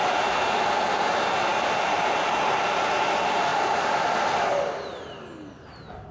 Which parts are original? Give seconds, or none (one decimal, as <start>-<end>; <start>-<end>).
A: 0.0-0.7; 3.5-5.6